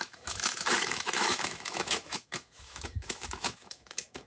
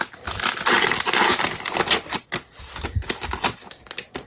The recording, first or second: second